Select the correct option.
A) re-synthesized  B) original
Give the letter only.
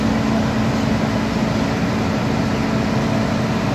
B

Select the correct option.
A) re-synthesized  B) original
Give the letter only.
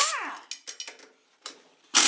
B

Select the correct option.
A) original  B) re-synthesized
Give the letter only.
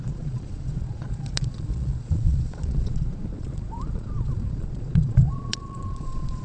B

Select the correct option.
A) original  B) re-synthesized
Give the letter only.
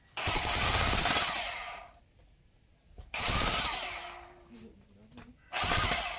A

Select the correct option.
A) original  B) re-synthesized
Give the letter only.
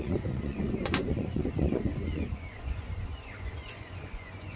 B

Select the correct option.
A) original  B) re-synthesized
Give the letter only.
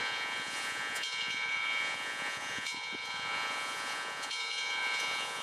B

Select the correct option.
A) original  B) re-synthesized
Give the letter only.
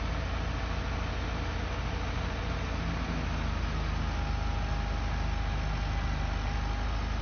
A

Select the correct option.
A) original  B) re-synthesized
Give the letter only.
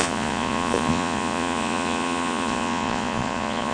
B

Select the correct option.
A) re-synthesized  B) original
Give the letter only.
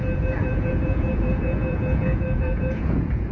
A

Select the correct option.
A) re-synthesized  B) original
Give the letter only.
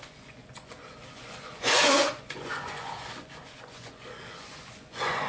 A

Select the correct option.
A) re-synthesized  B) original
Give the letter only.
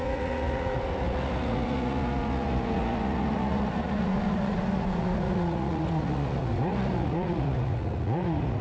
A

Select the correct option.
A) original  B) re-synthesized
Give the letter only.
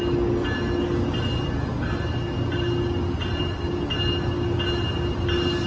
A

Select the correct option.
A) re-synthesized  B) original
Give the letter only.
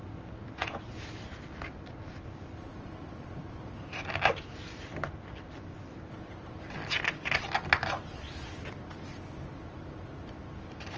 B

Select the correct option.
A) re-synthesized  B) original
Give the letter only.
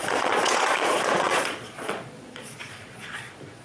A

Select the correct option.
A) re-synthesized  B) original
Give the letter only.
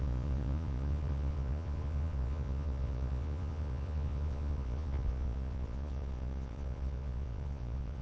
A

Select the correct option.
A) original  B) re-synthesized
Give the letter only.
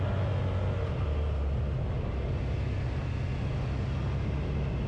A